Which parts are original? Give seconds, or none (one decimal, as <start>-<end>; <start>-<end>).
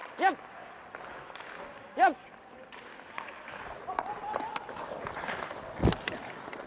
0.0-6.7